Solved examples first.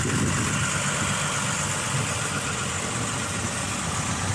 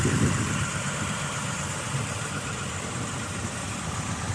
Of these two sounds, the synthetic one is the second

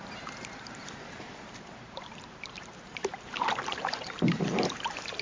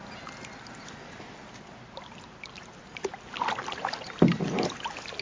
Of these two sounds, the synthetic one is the first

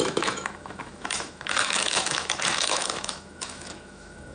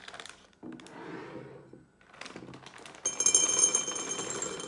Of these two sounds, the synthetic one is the first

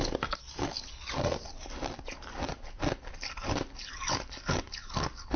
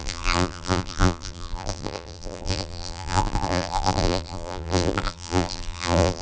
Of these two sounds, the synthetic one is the second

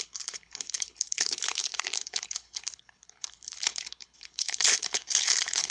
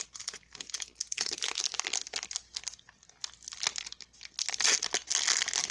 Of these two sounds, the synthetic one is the first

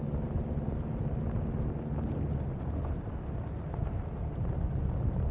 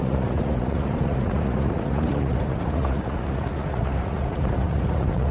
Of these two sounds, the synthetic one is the second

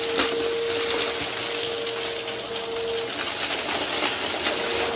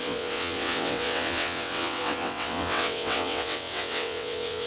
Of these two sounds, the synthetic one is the second